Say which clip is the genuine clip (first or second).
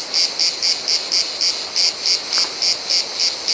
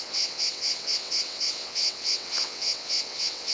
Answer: first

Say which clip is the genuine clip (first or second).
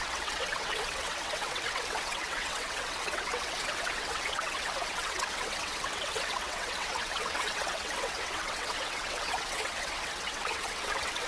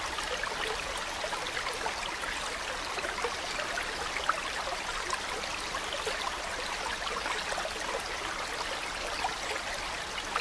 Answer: second